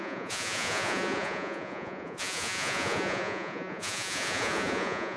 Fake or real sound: fake